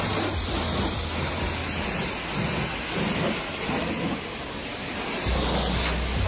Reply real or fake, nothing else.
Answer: real